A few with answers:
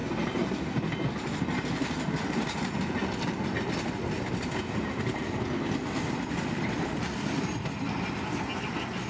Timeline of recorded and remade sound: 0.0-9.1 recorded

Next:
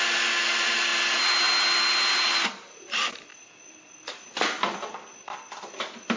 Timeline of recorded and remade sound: 0.0-6.2 recorded

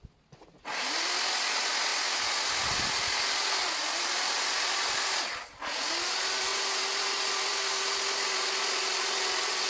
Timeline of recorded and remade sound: 0.0-9.7 recorded

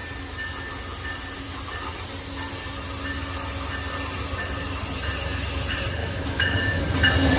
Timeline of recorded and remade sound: 0.0-6.0 recorded; 6.0-6.8 remade; 6.8-7.4 recorded

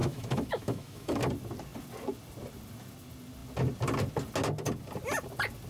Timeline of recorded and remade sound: 0.0-1.2 remade; 1.2-5.7 recorded

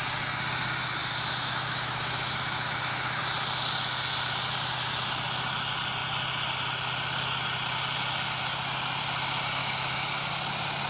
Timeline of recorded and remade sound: 0.0-1.0 recorded; 1.0-3.2 remade; 3.2-9.6 recorded; 9.6-10.3 remade; 10.3-10.9 recorded

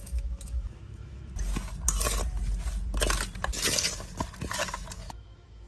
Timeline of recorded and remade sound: 0.0-1.3 remade; 1.3-5.0 recorded; 5.0-5.7 remade

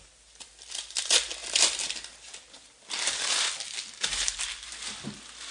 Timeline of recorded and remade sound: 0.0-5.5 recorded